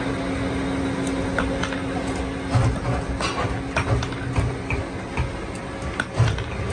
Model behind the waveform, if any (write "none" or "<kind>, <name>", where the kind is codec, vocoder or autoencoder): none